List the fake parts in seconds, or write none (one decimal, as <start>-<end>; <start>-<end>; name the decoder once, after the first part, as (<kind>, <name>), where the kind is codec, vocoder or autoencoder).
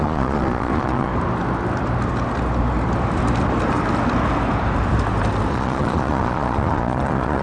0.0-1.1 (vocoder, Vocos); 5.5-7.4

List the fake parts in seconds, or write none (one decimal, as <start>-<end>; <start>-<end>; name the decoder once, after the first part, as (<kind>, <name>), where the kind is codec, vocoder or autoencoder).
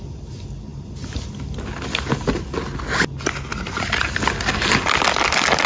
none